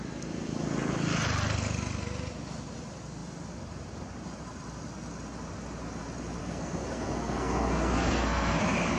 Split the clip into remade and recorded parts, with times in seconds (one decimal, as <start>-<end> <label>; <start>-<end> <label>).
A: 0.0-6.4 recorded; 6.4-8.6 remade; 8.6-9.0 recorded